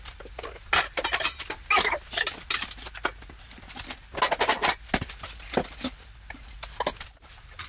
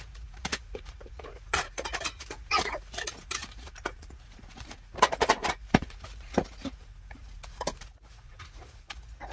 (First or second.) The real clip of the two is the first